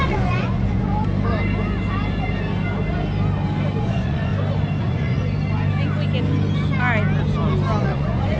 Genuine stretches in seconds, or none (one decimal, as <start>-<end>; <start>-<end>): 0.9-3.8; 4.3-4.8; 5.2-7.8